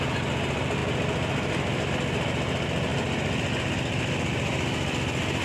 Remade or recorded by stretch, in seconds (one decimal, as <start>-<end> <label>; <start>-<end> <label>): 0.0-5.4 recorded